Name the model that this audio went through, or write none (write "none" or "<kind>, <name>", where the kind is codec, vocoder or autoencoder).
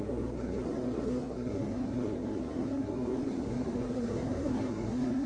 codec, SNAC